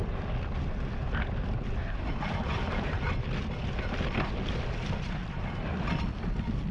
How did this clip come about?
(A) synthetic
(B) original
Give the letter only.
B